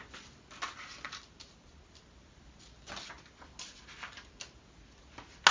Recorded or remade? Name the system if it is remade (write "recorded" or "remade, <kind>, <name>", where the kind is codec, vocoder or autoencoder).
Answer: recorded